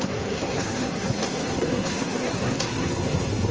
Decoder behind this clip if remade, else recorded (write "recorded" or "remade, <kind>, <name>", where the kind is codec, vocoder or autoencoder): remade, codec, SNAC